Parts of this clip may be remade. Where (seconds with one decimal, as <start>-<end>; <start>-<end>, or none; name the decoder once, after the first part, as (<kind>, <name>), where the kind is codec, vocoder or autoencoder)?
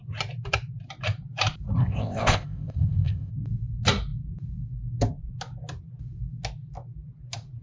1.8-3.3 (codec, ZipCodec)